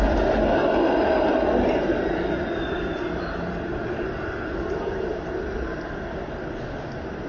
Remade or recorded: recorded